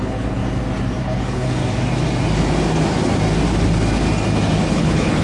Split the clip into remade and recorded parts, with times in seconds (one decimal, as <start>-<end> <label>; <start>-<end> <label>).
0.0-0.4 remade; 0.4-1.0 recorded; 1.0-1.6 remade; 1.6-4.7 recorded; 4.7-5.2 remade